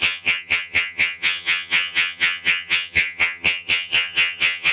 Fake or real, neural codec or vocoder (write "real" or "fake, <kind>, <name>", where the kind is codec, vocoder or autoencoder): fake, vocoder, HiFi-GAN